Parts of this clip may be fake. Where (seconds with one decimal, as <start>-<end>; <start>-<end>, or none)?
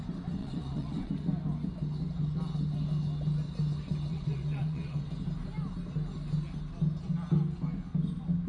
0.4-1.1; 4.1-5.0